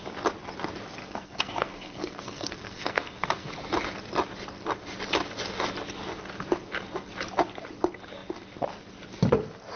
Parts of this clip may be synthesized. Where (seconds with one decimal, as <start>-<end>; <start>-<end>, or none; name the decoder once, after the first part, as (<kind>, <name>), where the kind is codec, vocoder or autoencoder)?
1.0-3.5 (codec, SNAC)